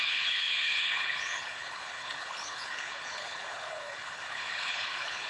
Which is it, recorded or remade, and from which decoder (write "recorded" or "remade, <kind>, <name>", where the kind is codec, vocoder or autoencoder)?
remade, codec, HILCodec